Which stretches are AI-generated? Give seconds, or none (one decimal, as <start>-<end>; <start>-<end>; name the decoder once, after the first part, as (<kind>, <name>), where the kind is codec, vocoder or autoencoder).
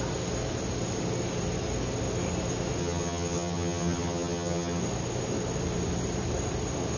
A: 2.8-4.8 (vocoder, HiFi-GAN)